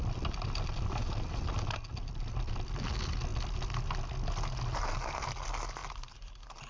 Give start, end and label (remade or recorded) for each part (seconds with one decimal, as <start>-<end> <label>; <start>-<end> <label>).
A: 0.0-6.7 recorded